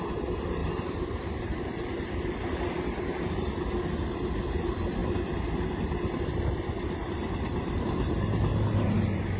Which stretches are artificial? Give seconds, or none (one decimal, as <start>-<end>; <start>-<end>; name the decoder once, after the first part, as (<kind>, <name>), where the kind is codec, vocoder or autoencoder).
0.6-1.4 (vocoder, BigVGAN v2); 5.0-5.7